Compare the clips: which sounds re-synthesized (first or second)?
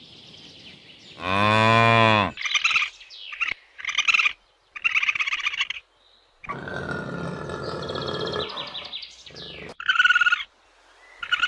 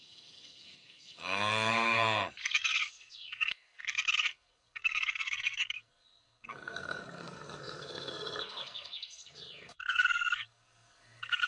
second